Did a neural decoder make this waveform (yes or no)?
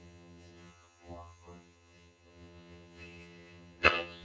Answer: yes